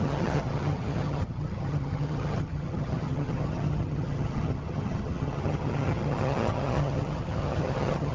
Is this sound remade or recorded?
remade